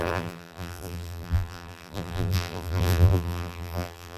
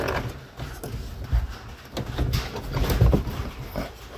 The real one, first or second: second